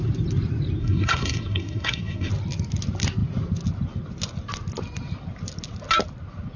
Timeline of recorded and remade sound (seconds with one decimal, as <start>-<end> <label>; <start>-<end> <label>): 0.0-0.8 recorded; 0.8-2.3 remade; 2.3-6.6 recorded